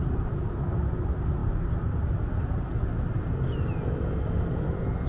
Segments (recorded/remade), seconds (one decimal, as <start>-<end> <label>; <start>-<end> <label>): 0.0-5.1 recorded